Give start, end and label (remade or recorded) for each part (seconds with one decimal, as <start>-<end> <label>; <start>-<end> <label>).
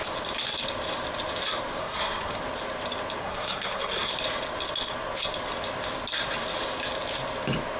0.0-1.8 recorded; 1.8-2.4 remade; 2.4-3.2 recorded; 3.2-4.1 remade; 4.1-7.8 recorded